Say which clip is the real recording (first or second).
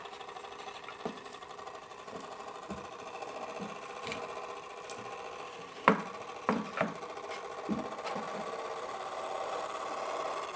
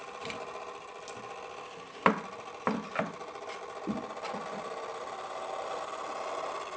second